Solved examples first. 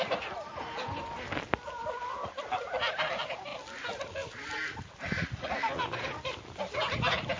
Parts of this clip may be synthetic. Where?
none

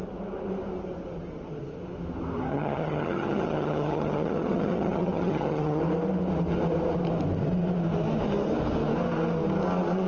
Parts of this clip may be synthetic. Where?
2.5-5.8 (vocoder, HiFi-GAN)

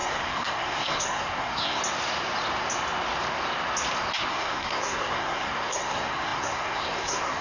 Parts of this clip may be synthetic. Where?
0.0-1.8 (codec, SNAC); 4.3-7.4